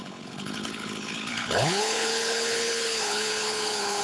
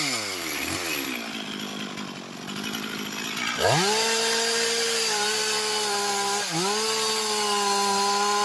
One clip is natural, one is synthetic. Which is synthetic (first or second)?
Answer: first